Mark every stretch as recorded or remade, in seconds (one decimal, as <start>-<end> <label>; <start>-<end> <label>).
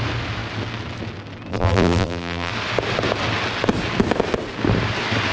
0.0-1.5 recorded; 1.5-2.5 remade; 2.5-5.3 recorded